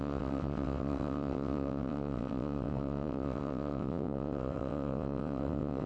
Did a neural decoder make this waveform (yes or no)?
yes